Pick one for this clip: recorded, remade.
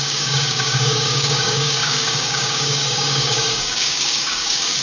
remade